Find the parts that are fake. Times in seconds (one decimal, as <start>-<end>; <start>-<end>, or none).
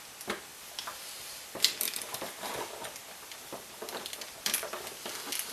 0.5-2.6; 3.0-4.8